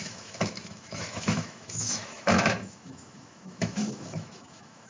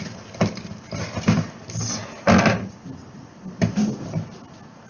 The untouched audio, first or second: second